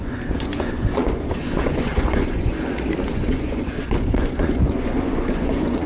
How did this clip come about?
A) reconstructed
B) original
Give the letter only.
A